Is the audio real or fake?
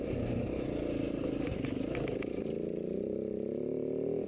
real